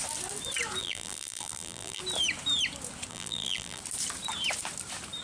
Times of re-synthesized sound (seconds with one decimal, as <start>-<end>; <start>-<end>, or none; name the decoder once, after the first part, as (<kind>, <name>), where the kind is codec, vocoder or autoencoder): 0.8-2.0 (vocoder, BigVGAN v2); 3.1-3.8